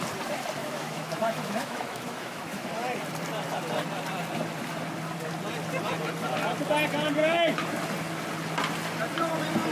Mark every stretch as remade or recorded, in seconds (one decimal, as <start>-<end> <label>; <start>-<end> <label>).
0.0-0.6 recorded; 0.6-2.7 remade; 2.7-7.2 recorded; 7.2-7.7 remade; 7.7-9.7 recorded